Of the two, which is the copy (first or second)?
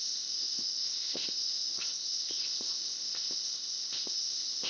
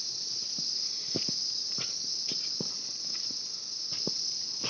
first